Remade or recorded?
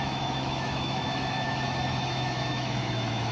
remade